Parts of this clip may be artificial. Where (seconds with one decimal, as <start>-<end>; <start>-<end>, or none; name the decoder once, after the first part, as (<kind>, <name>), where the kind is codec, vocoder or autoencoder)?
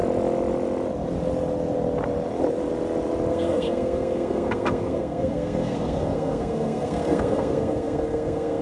3.3-8.6 (codec, SNAC)